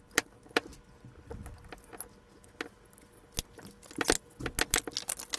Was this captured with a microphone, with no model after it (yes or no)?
yes